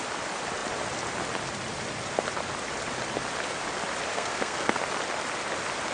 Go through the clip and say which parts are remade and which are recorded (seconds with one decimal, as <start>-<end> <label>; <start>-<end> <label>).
0.0-4.1 recorded; 4.1-4.8 remade; 4.8-5.9 recorded